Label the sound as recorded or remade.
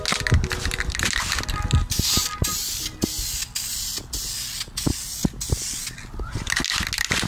recorded